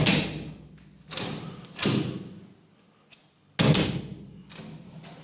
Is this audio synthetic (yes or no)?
no